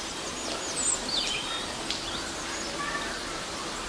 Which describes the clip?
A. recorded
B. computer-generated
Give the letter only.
A